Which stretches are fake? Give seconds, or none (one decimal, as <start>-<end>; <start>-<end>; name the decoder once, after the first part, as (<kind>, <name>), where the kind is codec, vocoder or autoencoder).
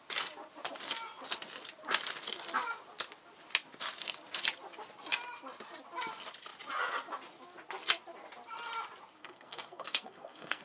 9.2-10.6 (codec, SNAC)